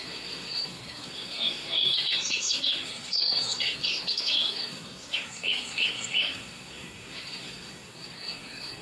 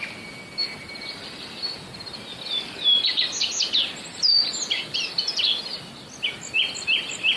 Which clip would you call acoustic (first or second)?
second